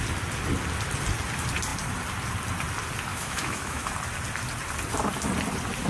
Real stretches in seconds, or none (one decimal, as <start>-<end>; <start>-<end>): 0.0-3.1; 3.9-5.9